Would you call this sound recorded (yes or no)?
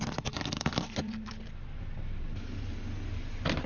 yes